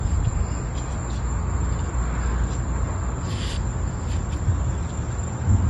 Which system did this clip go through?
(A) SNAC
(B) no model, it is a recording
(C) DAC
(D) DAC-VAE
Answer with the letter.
B